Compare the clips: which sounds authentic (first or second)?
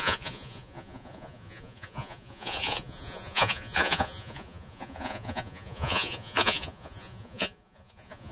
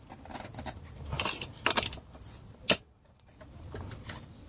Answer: second